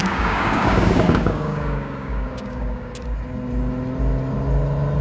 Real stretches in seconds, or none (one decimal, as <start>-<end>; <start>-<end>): 3.0-5.0